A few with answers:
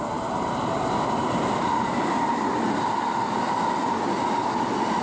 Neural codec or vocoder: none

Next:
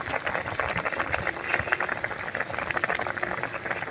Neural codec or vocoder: none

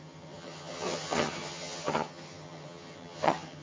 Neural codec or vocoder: vocoder, HiFi-GAN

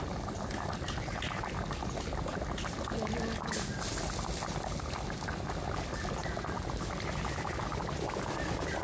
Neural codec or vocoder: none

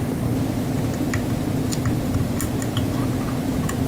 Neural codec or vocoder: none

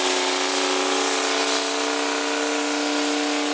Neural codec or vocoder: none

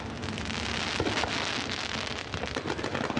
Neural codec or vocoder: none